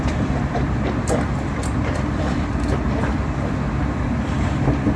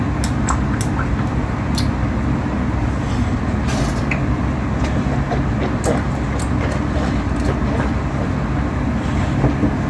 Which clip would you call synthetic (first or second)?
first